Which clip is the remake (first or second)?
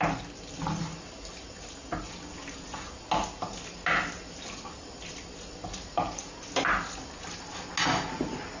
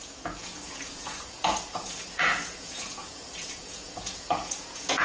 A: second